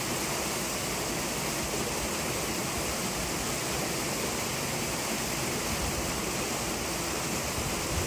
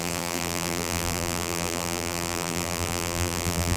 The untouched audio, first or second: first